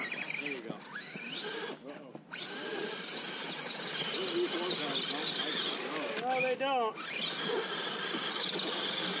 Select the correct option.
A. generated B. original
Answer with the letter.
B